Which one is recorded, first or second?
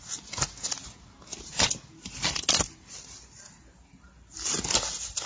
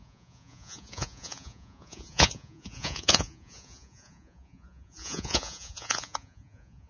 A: first